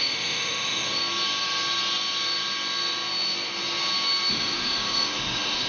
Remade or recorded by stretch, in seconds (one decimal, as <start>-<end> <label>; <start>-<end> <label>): 0.0-1.0 remade; 1.0-4.3 recorded; 4.3-5.7 remade

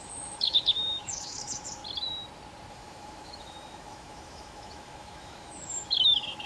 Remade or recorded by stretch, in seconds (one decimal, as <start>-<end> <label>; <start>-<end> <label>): 0.0-1.8 remade; 1.8-2.7 recorded; 2.7-6.5 remade